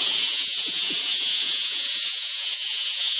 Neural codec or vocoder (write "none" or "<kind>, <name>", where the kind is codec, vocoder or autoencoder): vocoder, Vocos